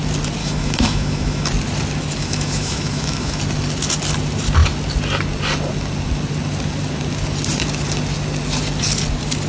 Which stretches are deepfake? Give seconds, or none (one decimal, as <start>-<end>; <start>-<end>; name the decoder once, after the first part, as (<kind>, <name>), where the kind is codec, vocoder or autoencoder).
0.4-1.5 (autoencoder, DAC-VAE); 2.2-3.4